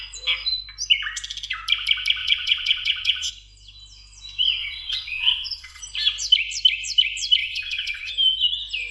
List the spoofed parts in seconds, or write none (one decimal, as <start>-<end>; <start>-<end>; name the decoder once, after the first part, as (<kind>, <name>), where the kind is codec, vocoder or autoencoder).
2.2-3.3 (vocoder, Vocos); 4.6-5.8; 7.4-8.1